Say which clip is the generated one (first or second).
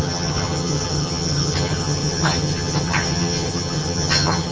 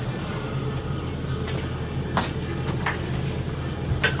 first